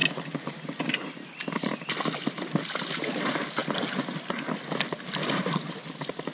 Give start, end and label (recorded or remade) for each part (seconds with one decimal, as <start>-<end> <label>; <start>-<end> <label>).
0.0-3.6 recorded; 3.6-4.3 remade; 4.3-6.3 recorded